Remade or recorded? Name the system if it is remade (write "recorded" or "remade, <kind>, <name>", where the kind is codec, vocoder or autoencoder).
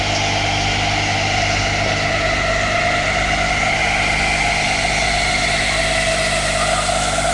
recorded